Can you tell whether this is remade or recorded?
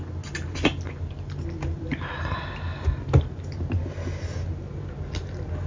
recorded